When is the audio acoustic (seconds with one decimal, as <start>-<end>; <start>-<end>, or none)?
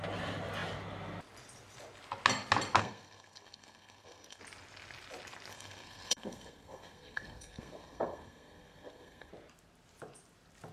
0.0-2.8; 4.4-5.5; 9.3-10.7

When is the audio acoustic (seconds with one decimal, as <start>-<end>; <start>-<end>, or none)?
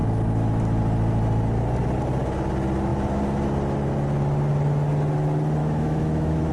0.0-5.6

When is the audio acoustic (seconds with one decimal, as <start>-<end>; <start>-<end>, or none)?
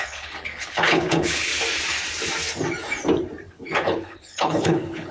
1.5-3.5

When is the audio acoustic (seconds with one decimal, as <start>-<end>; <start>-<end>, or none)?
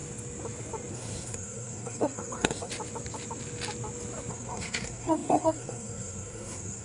0.0-0.9; 2.7-4.3